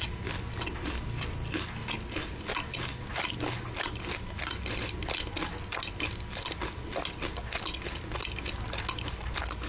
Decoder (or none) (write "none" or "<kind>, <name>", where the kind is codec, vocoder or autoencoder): none